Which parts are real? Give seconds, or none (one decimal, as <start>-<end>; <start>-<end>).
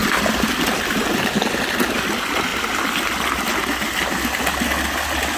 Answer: 1.1-5.4